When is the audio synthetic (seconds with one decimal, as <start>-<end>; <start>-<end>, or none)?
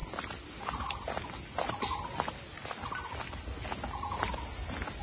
none